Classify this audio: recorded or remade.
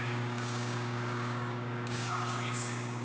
remade